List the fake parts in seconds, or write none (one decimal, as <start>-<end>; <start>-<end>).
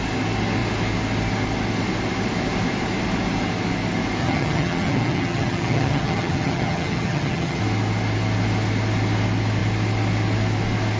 4.2-7.6